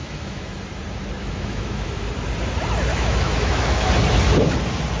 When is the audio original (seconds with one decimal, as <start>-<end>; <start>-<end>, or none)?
0.5-1.2; 2.1-2.9; 3.9-5.0